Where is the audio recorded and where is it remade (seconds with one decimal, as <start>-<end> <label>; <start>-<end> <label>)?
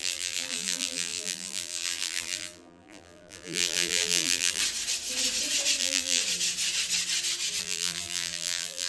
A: 0.0-4.6 remade; 4.6-5.8 recorded; 5.8-6.2 remade; 6.2-7.6 recorded; 7.6-8.9 remade